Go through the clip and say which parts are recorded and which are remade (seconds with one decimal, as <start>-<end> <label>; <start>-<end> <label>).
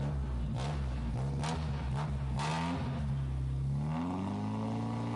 0.0-5.2 recorded